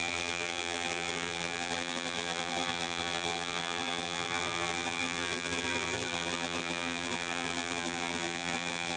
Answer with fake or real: fake